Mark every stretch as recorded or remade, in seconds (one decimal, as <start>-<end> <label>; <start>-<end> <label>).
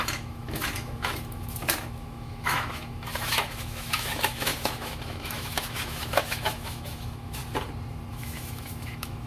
0.0-7.4 remade; 7.4-8.1 recorded; 8.1-9.3 remade